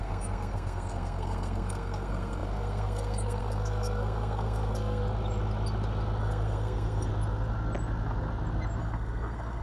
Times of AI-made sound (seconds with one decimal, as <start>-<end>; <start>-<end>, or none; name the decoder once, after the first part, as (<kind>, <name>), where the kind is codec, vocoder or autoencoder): 0.0-5.0 (codec, SNAC); 6.2-7.1; 8.8-9.6